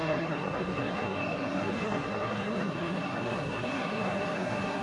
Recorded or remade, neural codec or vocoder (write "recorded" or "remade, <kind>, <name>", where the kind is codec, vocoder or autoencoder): remade, codec, SNAC